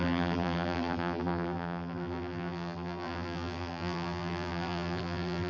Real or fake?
fake